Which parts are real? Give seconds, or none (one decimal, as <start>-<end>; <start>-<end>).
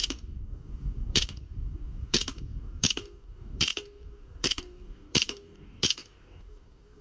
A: none